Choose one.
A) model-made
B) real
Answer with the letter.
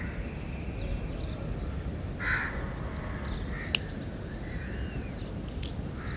B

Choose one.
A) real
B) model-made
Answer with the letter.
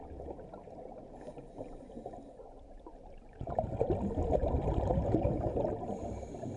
A